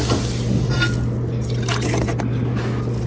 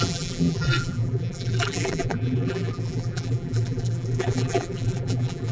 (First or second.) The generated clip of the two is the second